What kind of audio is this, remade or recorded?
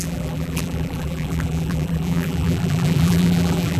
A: remade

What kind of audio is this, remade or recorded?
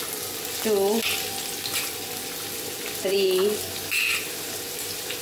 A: recorded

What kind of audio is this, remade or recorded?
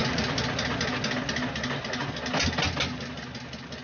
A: recorded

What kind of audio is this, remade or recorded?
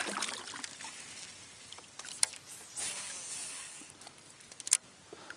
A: recorded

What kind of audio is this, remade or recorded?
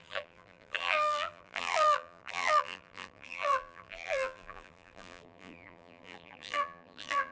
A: remade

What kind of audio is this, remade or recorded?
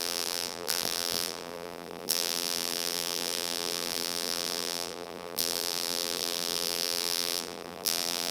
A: remade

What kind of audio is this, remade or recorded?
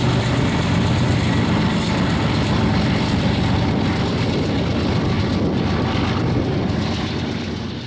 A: remade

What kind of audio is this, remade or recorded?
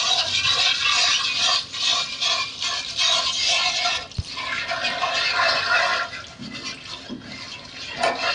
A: recorded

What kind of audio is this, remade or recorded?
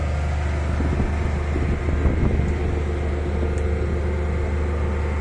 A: recorded